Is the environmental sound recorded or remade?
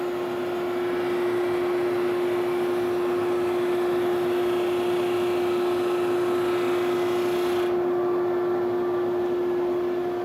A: recorded